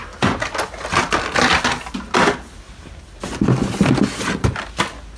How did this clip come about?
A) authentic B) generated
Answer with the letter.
A